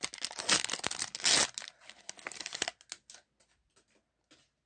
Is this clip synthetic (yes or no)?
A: no